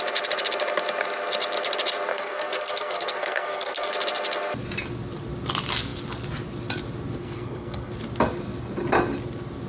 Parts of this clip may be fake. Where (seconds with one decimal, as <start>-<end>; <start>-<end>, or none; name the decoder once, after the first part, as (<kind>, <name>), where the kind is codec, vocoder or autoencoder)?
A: 2.1-3.9 (codec, SNAC); 7.2-7.9